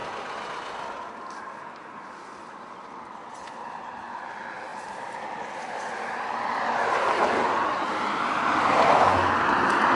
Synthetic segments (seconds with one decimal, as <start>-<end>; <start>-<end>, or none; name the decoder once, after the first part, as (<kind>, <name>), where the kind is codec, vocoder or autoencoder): none